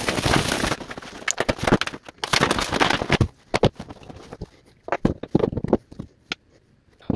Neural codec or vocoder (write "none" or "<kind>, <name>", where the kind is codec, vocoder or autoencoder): none